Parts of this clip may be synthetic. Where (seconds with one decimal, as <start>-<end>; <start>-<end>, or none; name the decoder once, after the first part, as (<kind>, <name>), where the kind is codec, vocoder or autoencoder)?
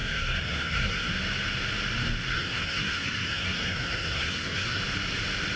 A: 0.0-1.1 (codec, SNAC); 2.3-4.8